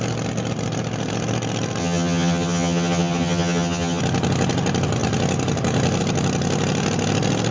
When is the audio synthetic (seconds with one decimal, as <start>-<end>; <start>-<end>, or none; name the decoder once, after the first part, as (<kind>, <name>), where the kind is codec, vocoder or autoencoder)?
1.8-4.0 (vocoder, HiFi-GAN)